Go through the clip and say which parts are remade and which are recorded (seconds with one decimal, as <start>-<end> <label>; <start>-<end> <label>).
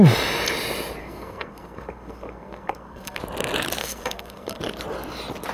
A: 0.0-1.0 recorded; 1.0-3.2 remade; 3.2-3.8 recorded; 3.8-4.6 remade; 4.6-5.5 recorded